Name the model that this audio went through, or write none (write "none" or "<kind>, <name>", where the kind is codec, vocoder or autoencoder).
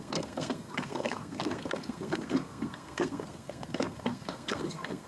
codec, SNAC